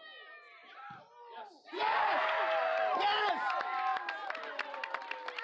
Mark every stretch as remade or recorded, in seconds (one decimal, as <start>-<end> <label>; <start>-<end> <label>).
0.0-0.6 recorded; 0.6-2.0 remade; 2.0-2.7 recorded; 2.7-3.3 remade; 3.3-5.4 recorded